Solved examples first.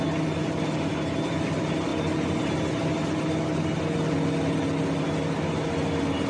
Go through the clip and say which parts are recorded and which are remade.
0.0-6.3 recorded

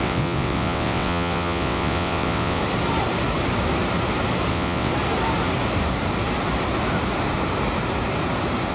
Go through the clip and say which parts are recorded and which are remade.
0.0-2.6 remade; 2.6-4.5 recorded; 4.5-4.9 remade; 4.9-8.7 recorded